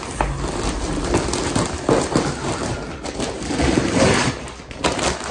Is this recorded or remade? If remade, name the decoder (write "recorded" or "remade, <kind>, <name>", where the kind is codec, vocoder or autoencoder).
recorded